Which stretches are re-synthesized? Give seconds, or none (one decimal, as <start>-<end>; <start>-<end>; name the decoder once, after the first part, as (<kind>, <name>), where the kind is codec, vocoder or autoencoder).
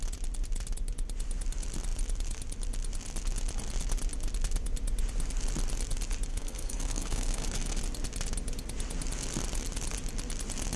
6.3-7.8 (codec, SNAC)